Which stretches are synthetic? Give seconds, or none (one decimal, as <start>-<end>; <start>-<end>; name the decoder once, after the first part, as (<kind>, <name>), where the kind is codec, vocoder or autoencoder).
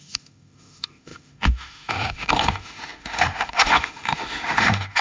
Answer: 0.0-5.0 (autoencoder, DAC-VAE)